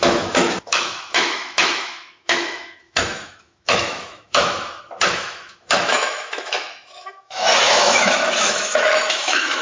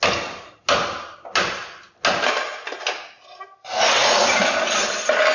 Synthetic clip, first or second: first